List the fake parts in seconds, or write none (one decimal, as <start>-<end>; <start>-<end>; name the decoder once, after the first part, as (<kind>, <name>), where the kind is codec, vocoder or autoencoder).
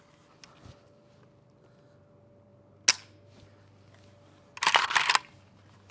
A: none